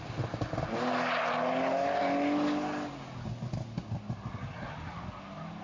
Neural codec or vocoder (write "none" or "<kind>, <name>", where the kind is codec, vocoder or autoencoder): none